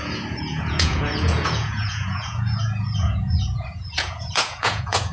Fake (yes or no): yes